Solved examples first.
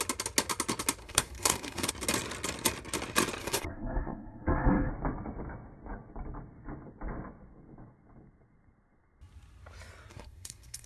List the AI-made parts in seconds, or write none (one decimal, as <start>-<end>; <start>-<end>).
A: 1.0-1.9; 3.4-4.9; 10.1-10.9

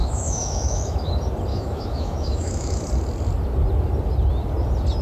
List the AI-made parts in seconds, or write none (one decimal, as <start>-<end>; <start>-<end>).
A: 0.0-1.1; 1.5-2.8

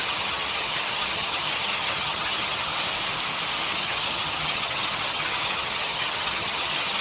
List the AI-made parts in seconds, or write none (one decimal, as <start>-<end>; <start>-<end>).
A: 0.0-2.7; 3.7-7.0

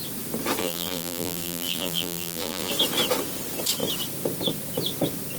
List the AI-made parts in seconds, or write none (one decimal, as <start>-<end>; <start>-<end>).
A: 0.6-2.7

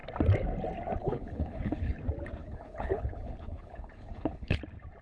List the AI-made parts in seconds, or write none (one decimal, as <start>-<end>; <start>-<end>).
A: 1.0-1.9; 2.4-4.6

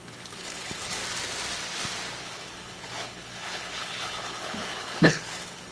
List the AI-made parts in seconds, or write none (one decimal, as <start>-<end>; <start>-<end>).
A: 0.0-1.0; 2.2-5.7

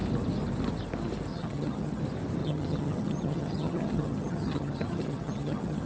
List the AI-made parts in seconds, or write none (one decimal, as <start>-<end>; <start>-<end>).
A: 1.3-2.0; 2.4-5.9